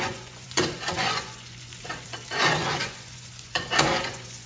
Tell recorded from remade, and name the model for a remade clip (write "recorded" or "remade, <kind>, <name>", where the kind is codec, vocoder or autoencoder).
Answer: remade, vocoder, Vocos